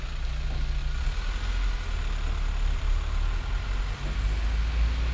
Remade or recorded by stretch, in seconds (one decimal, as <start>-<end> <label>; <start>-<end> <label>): 0.0-5.1 recorded